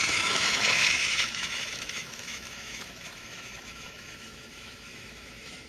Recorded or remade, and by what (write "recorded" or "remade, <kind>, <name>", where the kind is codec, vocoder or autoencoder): remade, autoencoder, DAC-VAE